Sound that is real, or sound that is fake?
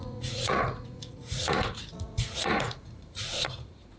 fake